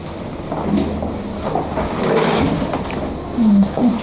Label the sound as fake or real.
real